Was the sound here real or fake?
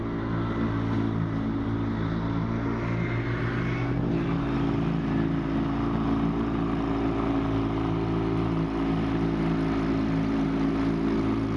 real